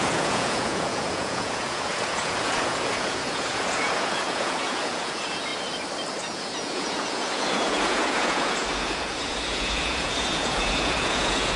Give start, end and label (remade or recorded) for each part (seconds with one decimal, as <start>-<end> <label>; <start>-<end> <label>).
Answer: 0.0-5.5 remade; 5.5-6.2 recorded; 6.2-11.6 remade